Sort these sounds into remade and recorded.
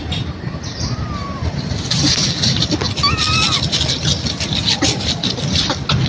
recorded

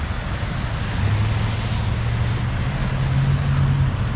recorded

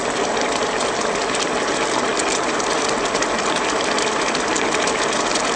recorded